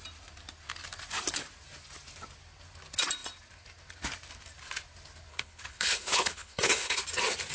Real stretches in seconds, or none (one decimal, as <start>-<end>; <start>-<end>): 0.0-5.3; 7.0-7.5